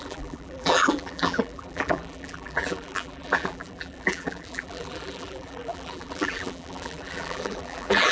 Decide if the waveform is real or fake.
fake